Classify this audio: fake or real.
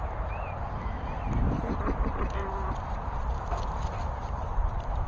fake